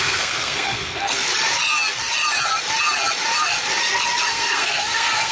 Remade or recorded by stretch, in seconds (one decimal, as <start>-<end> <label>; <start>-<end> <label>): 0.0-1.3 remade; 1.3-4.3 recorded; 4.3-5.3 remade